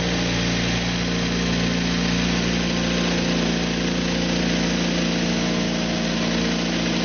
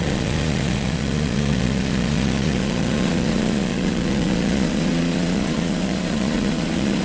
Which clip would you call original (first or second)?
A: first